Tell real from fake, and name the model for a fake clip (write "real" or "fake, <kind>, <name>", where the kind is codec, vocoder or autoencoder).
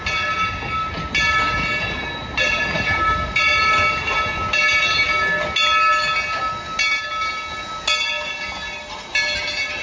real